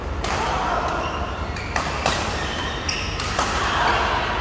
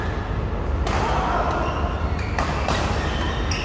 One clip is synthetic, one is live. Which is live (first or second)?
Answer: second